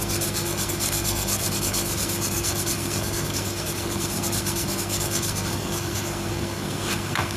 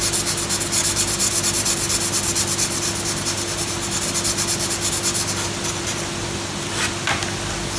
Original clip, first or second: second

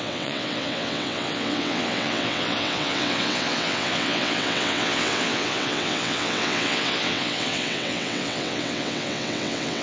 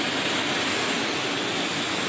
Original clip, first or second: second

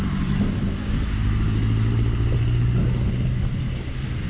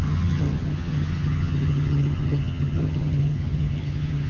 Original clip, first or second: first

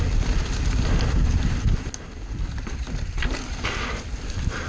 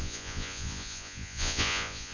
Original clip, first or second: first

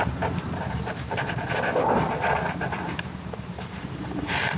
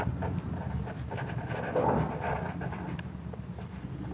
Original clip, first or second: second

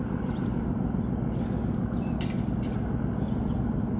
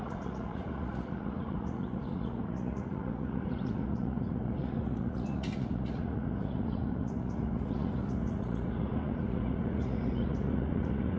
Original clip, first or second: first